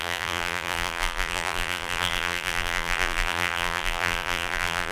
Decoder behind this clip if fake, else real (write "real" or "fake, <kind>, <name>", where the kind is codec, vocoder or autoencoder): fake, vocoder, BigVGAN v2